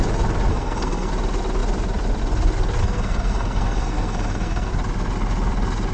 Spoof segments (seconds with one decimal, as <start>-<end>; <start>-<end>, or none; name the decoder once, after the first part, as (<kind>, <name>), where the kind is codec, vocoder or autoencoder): 0.5-1.1 (codec, SNAC); 2.8-4.7